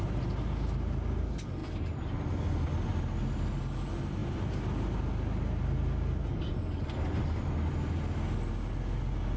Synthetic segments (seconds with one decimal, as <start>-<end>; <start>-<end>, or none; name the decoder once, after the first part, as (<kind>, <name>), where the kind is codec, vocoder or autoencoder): none